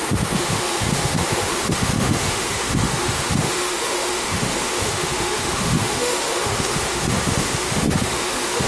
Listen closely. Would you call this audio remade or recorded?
remade